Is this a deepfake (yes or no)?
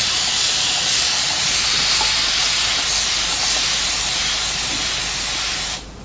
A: no